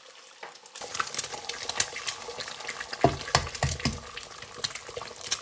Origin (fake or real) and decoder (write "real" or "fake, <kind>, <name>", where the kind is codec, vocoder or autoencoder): real